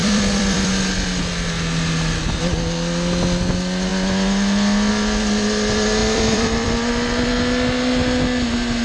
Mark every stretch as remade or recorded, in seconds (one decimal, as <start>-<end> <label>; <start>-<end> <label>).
0.0-0.7 remade; 0.7-6.0 recorded; 6.0-6.9 remade; 6.9-8.8 recorded